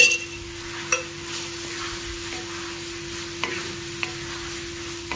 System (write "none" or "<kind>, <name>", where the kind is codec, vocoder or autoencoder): none